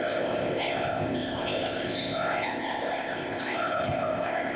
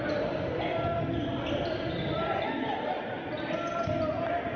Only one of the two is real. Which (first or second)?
second